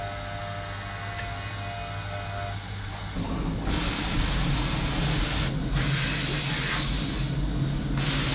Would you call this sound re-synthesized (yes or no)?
no